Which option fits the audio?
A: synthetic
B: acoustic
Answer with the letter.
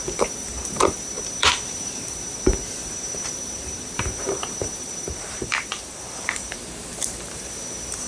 A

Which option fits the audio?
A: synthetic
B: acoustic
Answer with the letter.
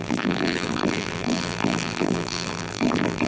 A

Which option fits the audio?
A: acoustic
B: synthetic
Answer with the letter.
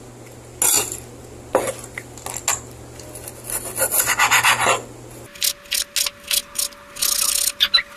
A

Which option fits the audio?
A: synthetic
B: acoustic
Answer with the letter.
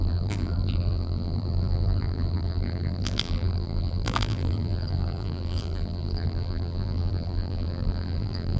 A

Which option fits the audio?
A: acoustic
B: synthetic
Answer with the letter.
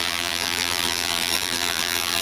B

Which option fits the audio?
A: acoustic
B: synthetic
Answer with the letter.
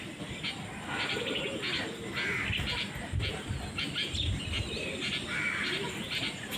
A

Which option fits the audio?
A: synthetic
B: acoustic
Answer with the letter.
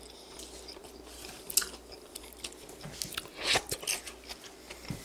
B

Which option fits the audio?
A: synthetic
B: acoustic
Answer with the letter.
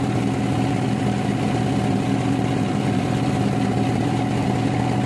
A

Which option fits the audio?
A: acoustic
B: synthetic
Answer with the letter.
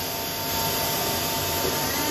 A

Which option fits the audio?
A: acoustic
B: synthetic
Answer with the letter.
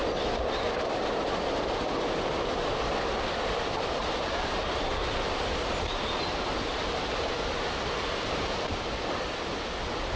B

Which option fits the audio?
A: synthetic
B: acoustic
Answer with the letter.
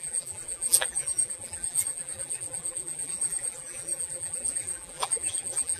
A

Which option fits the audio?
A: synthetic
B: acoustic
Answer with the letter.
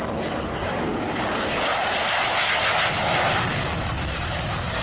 B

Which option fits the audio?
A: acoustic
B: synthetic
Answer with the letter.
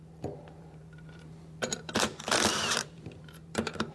B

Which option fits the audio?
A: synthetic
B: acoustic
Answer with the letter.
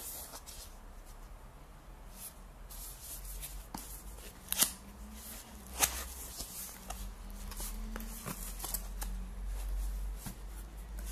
B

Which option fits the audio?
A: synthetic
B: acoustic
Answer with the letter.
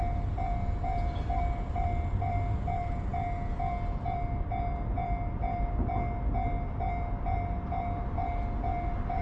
B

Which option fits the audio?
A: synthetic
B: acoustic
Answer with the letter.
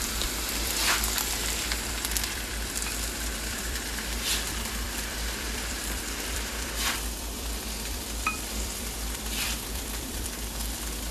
A